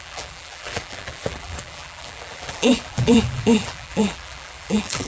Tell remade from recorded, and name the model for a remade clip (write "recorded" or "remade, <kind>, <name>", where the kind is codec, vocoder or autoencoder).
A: remade, vocoder, BigVGAN v2